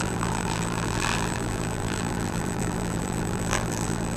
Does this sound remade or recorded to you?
remade